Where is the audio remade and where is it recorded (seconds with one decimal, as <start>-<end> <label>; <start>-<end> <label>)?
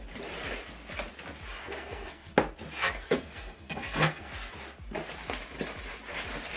0.0-1.6 recorded; 1.6-2.3 remade; 2.3-2.8 recorded; 2.8-4.5 remade; 4.5-6.6 recorded